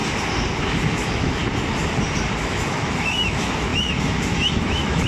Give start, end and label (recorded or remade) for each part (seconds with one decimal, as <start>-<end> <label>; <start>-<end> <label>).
0.0-0.9 recorded; 0.9-1.4 remade; 1.4-2.4 recorded; 2.4-5.1 remade